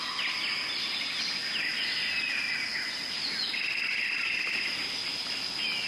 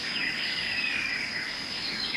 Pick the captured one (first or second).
first